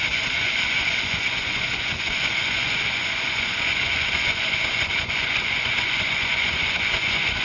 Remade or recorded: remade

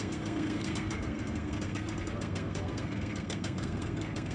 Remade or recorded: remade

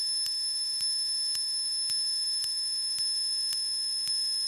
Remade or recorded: recorded